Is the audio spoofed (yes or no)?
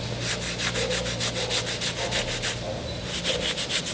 no